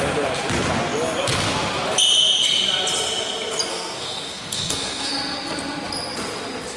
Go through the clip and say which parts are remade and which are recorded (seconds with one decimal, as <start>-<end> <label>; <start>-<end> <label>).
0.0-3.7 recorded; 3.7-5.1 remade; 5.1-6.8 recorded